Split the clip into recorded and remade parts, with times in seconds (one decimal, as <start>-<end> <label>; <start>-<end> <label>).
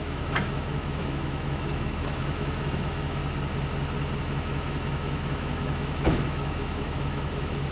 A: 0.0-3.2 remade; 3.2-4.2 recorded; 4.2-7.7 remade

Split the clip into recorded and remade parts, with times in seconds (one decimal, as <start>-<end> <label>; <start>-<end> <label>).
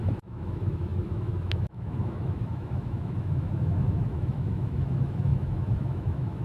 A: 0.0-6.4 remade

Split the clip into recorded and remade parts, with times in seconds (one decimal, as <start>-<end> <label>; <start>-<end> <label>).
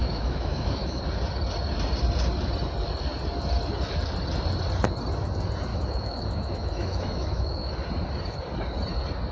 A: 0.0-1.0 remade; 1.0-5.7 recorded; 5.7-7.7 remade; 7.7-9.3 recorded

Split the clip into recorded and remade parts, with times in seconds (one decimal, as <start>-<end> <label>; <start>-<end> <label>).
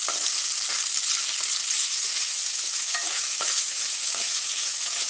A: 0.0-1.8 recorded; 1.8-5.1 remade